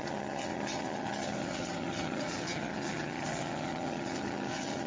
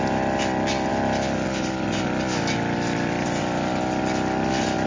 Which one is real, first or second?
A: second